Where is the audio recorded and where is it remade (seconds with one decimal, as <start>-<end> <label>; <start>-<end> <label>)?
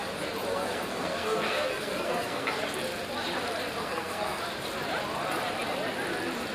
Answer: 0.0-0.5 recorded; 0.5-2.5 remade; 2.5-3.8 recorded; 3.8-4.4 remade; 4.4-6.5 recorded